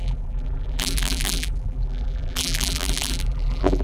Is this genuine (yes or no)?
no